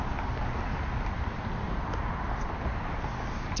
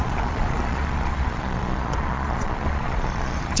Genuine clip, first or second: first